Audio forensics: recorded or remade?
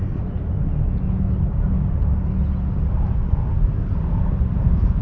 recorded